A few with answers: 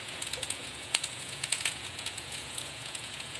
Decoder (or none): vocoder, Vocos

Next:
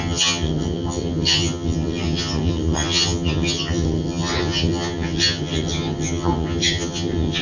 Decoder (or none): vocoder, HiFi-GAN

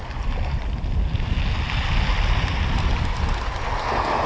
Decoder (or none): none